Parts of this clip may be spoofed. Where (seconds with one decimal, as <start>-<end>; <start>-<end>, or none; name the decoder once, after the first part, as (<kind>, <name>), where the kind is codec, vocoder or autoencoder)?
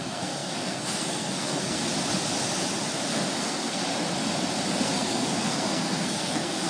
0.0-1.9 (codec, SNAC); 3.4-3.8; 4.8-6.7